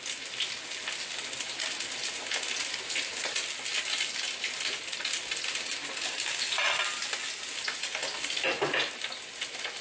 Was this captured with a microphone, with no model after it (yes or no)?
yes